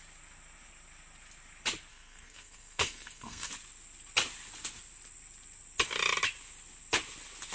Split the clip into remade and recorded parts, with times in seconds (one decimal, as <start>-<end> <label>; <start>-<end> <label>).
0.0-1.9 recorded; 1.9-3.5 remade; 3.5-7.5 recorded